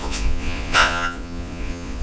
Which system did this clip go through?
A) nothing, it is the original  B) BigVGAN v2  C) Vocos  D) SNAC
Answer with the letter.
C